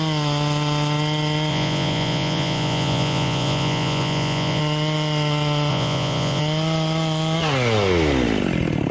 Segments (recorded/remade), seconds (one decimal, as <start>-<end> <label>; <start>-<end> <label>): 0.0-1.5 recorded; 1.5-4.6 remade; 4.6-5.7 recorded; 5.7-6.4 remade; 6.4-8.9 recorded